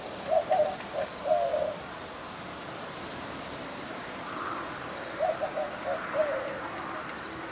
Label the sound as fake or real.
real